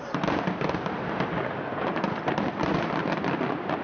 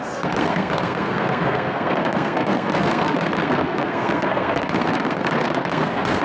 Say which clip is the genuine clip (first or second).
first